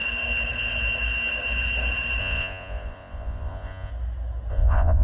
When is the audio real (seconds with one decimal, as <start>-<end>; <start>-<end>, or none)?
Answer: 0.0-2.2; 3.9-4.5